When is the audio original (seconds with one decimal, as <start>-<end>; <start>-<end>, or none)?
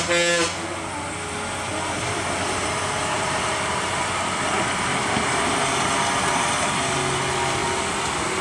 0.0-1.7; 4.4-4.9; 5.4-8.4